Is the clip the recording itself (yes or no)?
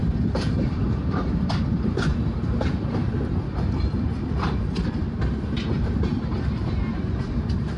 no